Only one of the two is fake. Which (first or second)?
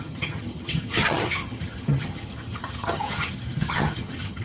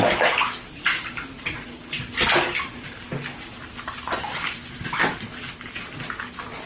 first